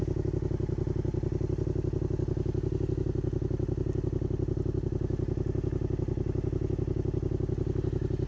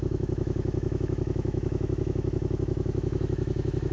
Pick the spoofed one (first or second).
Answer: second